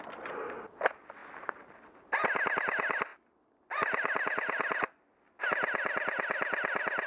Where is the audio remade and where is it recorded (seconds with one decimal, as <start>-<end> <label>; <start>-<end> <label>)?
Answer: 0.0-7.1 recorded